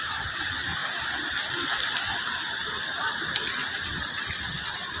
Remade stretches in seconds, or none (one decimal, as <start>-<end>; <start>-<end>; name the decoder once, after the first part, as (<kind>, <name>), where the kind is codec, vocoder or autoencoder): none